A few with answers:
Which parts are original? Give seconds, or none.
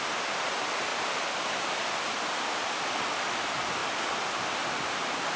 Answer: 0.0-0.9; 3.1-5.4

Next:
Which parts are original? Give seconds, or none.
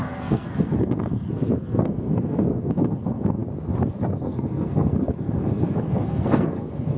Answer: 3.4-3.9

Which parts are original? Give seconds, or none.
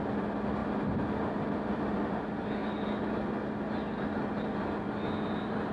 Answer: 0.0-5.7